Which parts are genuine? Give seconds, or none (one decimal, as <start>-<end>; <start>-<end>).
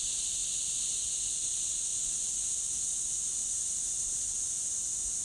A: 0.0-5.2